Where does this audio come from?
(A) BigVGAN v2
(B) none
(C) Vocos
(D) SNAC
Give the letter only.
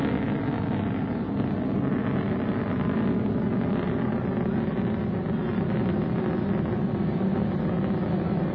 B